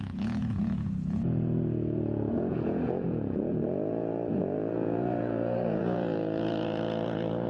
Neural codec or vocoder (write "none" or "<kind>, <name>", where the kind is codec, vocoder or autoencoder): vocoder, Vocos